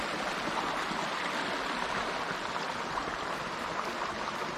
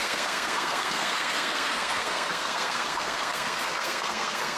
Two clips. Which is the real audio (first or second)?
first